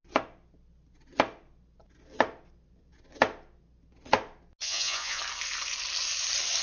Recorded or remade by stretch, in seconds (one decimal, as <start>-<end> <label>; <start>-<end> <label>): 0.0-4.6 recorded; 4.6-5.2 remade; 5.2-6.6 recorded